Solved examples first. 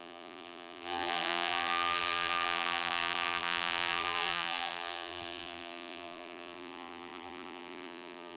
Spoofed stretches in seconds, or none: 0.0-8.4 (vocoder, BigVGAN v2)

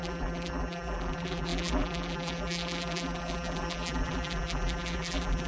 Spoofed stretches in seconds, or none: 0.0-5.5 (vocoder, BigVGAN v2)